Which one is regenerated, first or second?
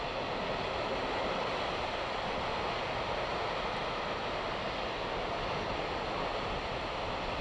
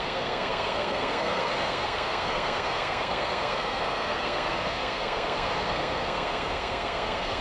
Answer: second